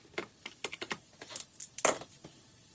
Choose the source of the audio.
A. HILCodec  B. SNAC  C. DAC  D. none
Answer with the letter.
D